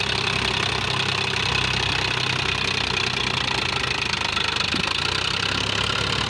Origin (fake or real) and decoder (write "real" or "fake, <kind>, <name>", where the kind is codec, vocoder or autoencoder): real